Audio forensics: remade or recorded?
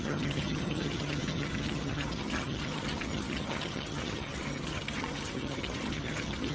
remade